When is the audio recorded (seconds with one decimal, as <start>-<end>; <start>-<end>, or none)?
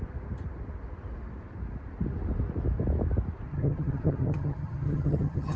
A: 0.0-3.5